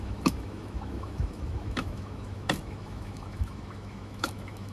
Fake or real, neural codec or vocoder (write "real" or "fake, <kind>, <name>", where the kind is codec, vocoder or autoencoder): fake, autoencoder, DAC-VAE